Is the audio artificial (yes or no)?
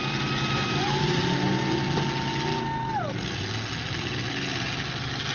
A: no